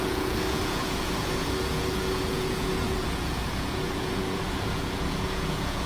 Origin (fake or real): fake